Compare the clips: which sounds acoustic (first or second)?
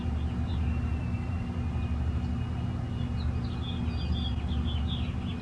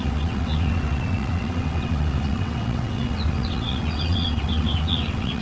first